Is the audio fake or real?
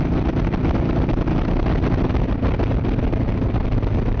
real